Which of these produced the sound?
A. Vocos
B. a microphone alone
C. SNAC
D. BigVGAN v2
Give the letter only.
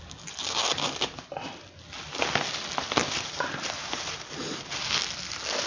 B